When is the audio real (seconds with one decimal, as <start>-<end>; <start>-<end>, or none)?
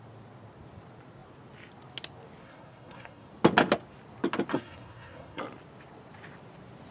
0.0-2.4; 3.3-4.5; 5.4-6.9